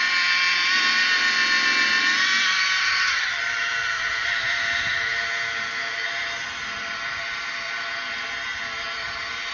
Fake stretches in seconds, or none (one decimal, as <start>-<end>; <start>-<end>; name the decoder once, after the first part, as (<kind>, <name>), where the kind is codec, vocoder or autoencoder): 2.8-3.4 (vocoder, HiFi-GAN)